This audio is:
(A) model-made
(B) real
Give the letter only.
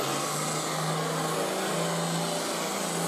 B